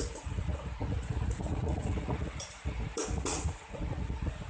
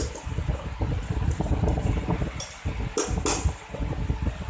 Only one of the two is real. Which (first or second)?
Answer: second